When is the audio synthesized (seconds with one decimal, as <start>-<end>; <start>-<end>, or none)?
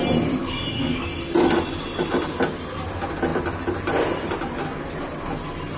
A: 0.4-1.1